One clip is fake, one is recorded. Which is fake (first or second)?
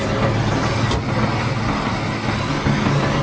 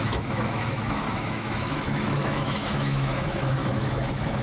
second